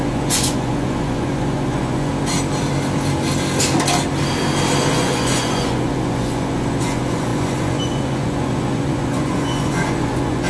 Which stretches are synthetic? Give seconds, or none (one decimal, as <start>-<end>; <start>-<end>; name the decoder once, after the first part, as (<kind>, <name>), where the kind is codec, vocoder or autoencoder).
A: 0.0-2.1 (vocoder, Vocos); 4.9-10.5